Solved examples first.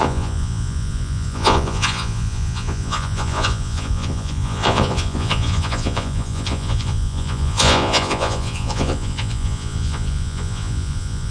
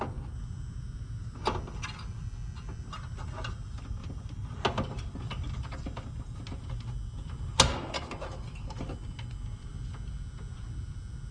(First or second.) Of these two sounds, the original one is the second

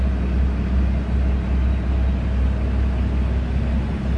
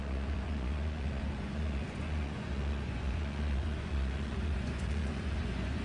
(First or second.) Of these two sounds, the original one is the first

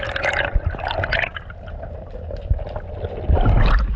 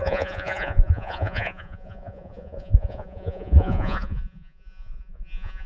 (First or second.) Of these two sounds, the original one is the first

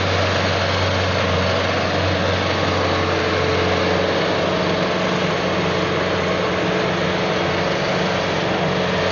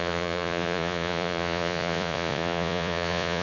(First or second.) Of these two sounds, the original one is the first